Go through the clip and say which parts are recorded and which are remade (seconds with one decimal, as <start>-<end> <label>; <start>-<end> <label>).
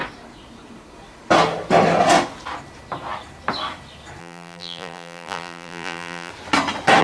0.0-4.2 recorded; 4.2-6.3 remade; 6.3-7.0 recorded